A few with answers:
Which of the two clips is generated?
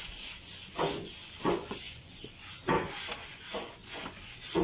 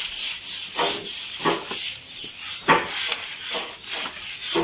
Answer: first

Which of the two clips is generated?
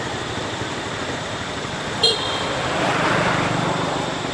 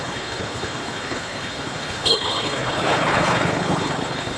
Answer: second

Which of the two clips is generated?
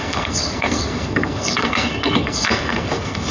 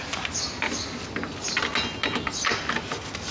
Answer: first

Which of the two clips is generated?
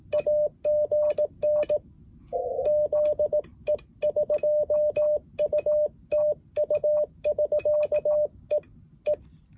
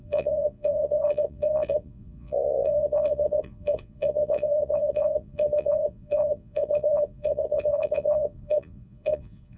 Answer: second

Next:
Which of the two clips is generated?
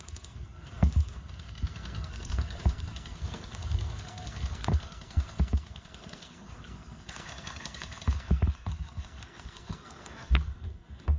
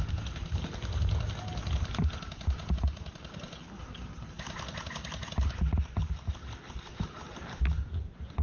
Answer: first